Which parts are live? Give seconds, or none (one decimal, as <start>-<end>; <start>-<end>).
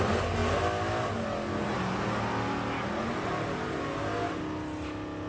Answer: 0.0-5.3